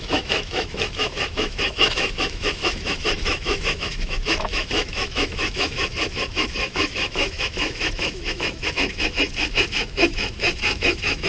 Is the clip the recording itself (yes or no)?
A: no